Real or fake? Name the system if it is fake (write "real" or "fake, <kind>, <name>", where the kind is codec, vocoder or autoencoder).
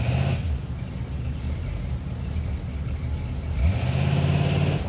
real